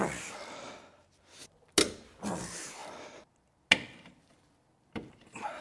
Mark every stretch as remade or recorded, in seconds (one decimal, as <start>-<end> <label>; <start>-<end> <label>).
0.0-5.6 recorded